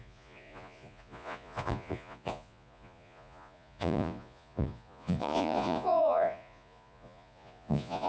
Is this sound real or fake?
fake